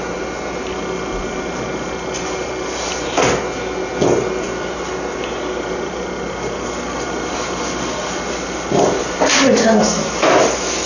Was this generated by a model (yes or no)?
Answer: no